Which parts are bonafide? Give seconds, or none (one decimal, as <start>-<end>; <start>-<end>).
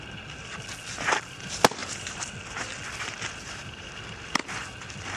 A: 0.0-5.2